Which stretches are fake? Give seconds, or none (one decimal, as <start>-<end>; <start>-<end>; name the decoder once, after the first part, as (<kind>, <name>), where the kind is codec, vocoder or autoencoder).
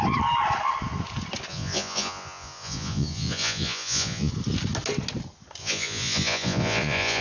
1.5-4.3 (vocoder, Vocos); 5.6-7.2